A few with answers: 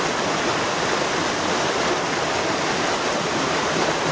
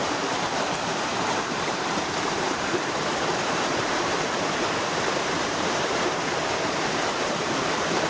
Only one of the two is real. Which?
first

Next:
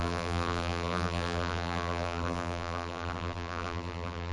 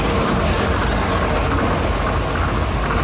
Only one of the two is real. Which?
second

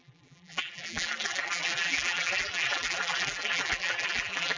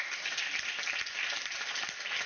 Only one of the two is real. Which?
second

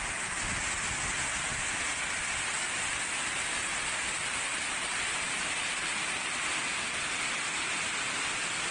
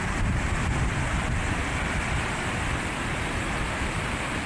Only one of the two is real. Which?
first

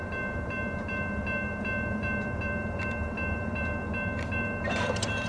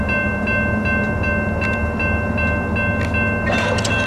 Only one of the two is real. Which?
second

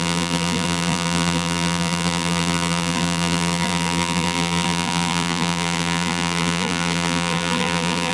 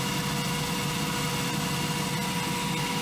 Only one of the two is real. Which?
second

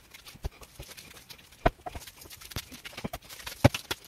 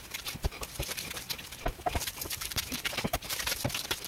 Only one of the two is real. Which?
first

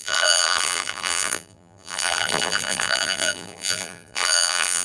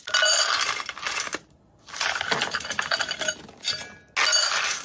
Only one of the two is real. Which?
second